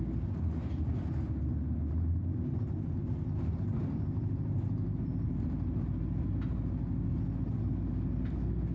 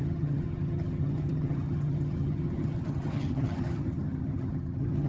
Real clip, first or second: first